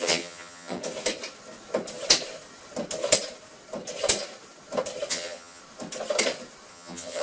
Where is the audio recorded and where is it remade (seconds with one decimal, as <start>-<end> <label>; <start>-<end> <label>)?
0.0-0.8 remade; 0.8-5.1 recorded; 5.1-5.6 remade; 5.6-6.7 recorded; 6.7-7.2 remade